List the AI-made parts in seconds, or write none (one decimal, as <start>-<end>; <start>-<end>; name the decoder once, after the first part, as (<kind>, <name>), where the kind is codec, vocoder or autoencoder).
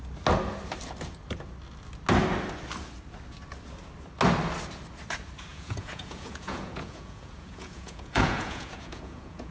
5.5-9.5 (vocoder, Vocos)